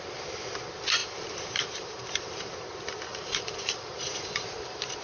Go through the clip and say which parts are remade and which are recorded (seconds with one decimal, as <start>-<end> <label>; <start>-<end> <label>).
0.0-1.0 recorded; 1.0-2.5 remade; 2.5-3.1 recorded; 3.1-5.0 remade

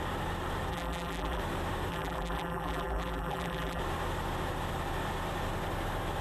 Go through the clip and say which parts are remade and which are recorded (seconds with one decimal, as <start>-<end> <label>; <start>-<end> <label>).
0.0-0.7 recorded; 0.7-1.4 remade; 1.4-1.9 recorded; 1.9-3.8 remade; 3.8-6.2 recorded